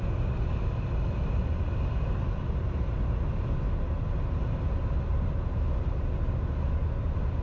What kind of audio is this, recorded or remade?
recorded